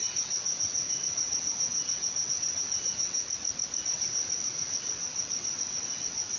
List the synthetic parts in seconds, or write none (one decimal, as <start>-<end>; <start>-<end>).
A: 0.0-3.2; 3.8-6.4

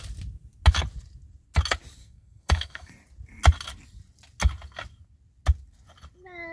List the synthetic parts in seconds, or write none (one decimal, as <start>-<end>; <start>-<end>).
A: 2.0-2.9

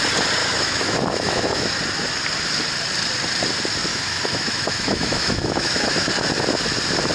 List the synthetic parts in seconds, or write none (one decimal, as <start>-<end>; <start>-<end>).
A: 0.4-1.7; 3.9-6.1

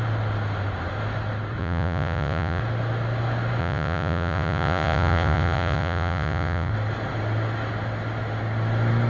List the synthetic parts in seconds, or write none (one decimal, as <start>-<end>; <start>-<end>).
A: 1.6-2.6; 3.6-6.7